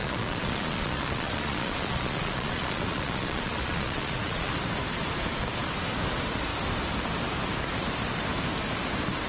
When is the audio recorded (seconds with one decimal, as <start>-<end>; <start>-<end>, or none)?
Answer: 4.5-9.3